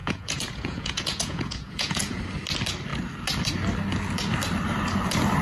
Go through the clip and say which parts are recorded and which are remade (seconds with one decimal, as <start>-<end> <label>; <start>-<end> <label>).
0.0-2.2 remade; 2.2-5.4 recorded